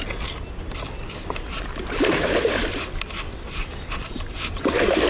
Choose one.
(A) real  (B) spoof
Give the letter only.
A